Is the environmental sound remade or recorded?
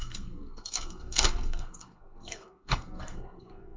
remade